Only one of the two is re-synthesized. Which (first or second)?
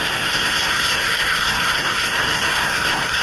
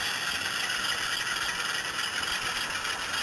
first